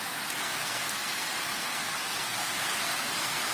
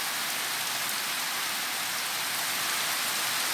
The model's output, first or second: first